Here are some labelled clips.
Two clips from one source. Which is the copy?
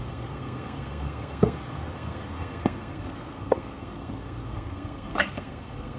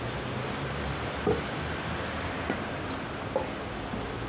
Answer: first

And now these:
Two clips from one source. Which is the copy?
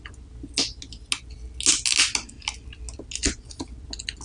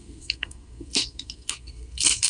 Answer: second